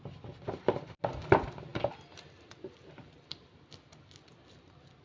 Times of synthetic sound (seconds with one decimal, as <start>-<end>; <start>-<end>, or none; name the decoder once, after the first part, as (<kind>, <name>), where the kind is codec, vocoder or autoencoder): none